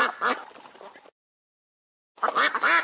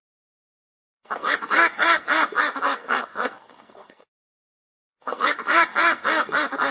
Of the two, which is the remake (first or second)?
second